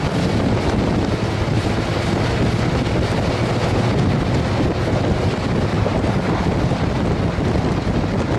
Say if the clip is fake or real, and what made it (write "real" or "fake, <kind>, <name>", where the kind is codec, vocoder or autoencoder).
real